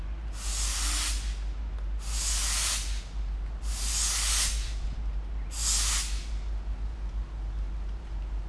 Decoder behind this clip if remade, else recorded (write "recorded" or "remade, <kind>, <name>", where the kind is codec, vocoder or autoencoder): recorded